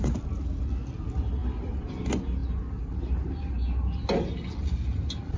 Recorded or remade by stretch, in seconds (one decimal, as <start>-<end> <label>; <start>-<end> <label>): 0.0-1.4 recorded; 1.4-1.9 remade; 1.9-5.4 recorded